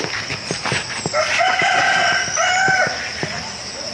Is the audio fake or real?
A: real